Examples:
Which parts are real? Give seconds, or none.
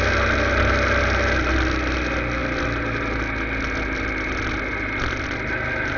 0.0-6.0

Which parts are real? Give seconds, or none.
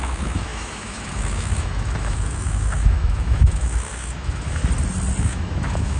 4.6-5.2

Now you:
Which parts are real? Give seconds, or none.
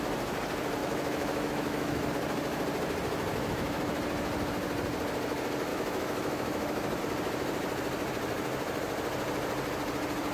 0.0-0.8; 2.1-3.3; 4.0-5.7; 7.0-10.3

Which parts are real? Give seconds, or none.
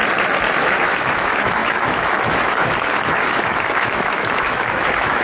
0.0-0.6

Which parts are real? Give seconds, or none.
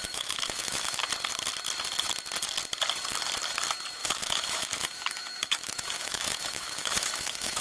1.0-4.0